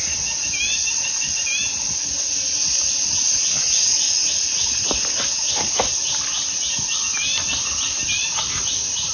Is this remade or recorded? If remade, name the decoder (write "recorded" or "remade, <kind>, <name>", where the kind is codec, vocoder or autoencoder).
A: recorded